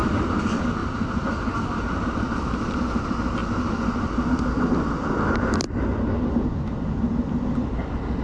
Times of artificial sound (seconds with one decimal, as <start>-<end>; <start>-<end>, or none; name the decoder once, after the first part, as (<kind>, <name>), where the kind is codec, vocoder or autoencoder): 0.8-2.8 (vocoder, BigVGAN v2)